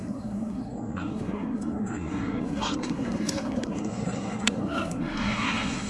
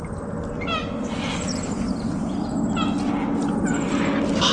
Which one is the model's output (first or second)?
first